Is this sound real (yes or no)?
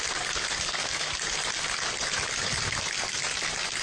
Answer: yes